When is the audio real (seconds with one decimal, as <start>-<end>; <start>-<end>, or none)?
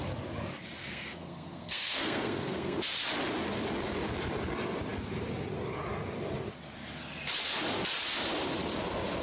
0.0-0.8; 2.8-9.2